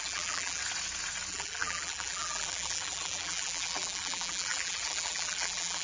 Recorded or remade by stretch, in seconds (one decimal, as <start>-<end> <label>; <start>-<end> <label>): 0.0-0.6 remade; 0.6-1.3 recorded; 1.3-5.8 remade